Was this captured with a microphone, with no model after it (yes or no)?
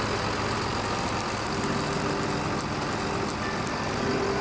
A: yes